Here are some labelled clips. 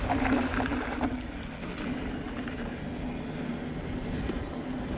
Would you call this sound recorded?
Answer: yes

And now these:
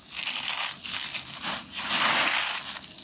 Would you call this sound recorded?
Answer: yes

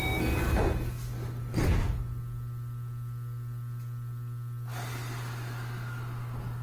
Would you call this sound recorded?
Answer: yes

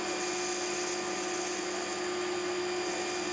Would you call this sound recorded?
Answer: yes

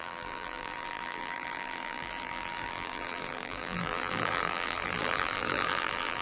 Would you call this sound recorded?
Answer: no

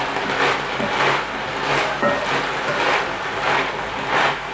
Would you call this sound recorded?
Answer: yes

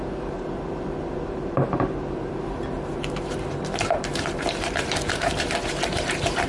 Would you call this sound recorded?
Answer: no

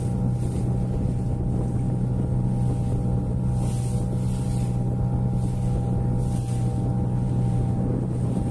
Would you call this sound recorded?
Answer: yes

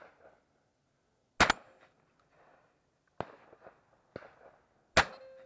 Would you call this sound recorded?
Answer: yes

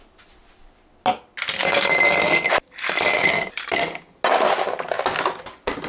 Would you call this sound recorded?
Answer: yes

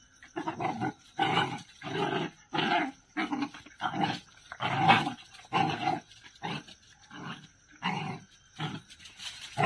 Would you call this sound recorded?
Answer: yes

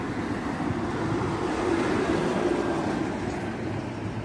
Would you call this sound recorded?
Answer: yes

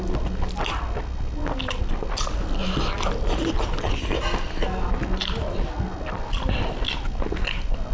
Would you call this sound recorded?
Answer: yes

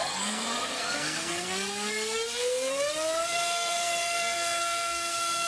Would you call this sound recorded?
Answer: no